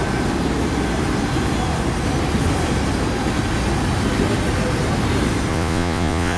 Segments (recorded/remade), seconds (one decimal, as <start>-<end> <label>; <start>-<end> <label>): 0.0-5.5 recorded; 5.5-6.4 remade